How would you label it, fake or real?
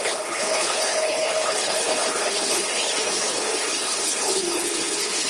fake